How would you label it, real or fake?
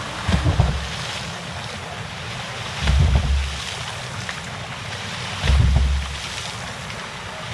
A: real